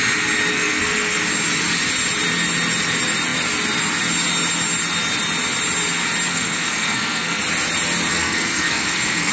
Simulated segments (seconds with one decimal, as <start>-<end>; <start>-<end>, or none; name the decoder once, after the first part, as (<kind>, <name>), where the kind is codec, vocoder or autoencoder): 0.5-1.2 (codec, SNAC); 6.3-7.4; 8.1-9.3